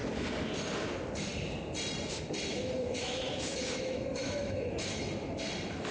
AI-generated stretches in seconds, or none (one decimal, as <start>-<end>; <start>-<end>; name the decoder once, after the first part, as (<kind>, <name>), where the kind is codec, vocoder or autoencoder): 2.5-5.0 (autoencoder, DAC-VAE)